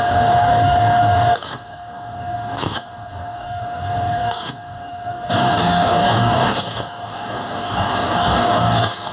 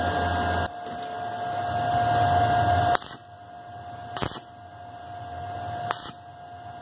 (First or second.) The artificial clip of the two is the first